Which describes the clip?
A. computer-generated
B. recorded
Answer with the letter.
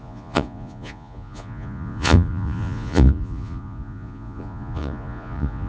A